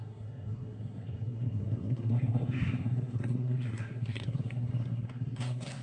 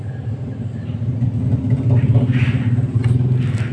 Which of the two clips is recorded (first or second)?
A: second